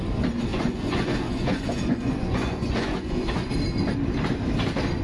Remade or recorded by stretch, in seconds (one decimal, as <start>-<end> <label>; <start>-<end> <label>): 0.0-0.5 recorded; 0.5-3.5 remade; 3.5-5.0 recorded